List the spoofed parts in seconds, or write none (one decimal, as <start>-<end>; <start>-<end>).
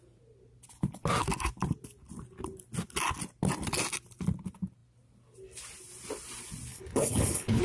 6.7-7.6